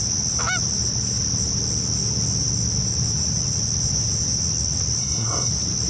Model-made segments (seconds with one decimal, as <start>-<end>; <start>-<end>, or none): 5.0-5.5